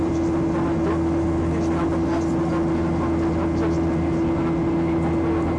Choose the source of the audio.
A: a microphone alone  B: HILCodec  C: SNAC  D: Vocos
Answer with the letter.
A